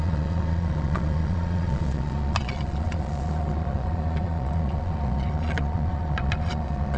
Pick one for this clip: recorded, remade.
remade